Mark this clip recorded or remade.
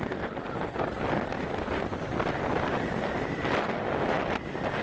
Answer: recorded